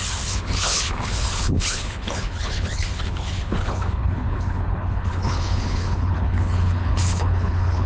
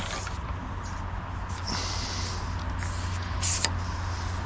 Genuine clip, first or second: second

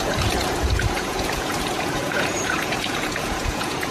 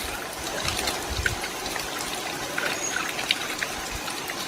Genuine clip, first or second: second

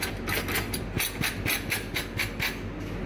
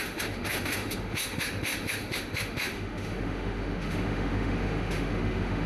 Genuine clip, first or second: first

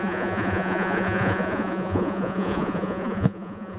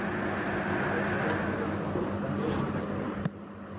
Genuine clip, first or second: second